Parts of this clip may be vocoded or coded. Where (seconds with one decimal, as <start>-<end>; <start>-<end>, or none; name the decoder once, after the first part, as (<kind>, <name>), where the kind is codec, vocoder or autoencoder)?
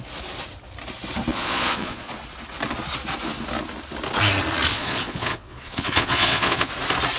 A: 1.3-2.1 (vocoder, Vocos); 4.7-6.7